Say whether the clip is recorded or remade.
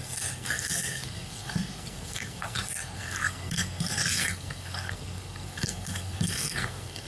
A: remade